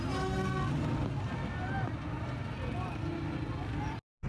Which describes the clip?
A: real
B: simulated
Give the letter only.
A